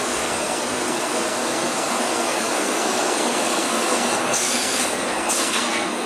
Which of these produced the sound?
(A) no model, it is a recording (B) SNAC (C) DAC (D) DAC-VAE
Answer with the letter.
B